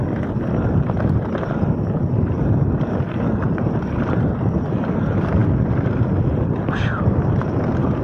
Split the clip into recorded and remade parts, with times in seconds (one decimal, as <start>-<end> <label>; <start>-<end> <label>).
0.0-8.0 recorded